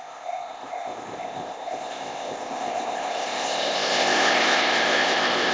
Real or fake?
fake